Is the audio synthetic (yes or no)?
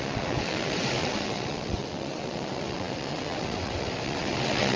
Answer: yes